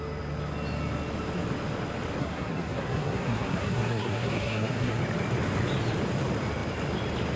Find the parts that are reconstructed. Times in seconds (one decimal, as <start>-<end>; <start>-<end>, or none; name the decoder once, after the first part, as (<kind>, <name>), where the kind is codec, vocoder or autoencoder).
2.2-5.0 (codec, SNAC)